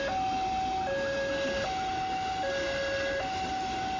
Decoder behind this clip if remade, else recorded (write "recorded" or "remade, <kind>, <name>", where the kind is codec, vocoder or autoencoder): recorded